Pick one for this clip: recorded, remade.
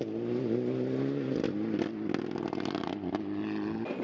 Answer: recorded